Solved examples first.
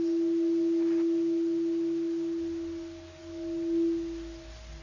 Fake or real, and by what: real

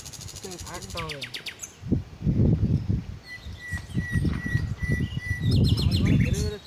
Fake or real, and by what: real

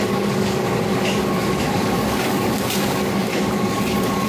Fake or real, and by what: fake, codec, DAC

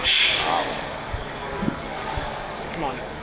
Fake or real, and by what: fake, codec, DAC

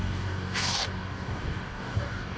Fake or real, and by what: fake, codec, DAC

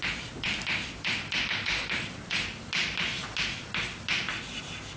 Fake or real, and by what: real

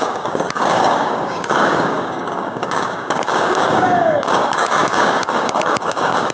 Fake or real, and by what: fake, codec, DAC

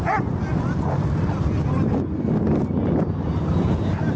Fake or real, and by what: real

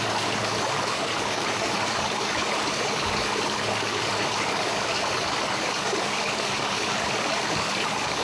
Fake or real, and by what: fake, codec, DAC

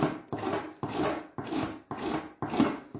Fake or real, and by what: real